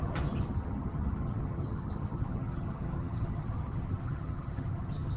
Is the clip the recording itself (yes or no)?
no